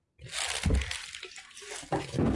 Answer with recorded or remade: recorded